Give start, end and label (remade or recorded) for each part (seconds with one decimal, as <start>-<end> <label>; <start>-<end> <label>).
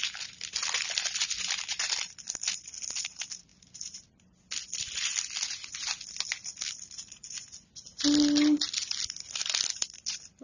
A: 0.0-10.4 recorded